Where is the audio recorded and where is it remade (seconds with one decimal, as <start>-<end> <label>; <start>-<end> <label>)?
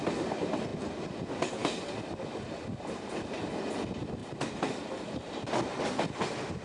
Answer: 0.0-4.2 recorded; 4.2-5.3 remade; 5.3-6.6 recorded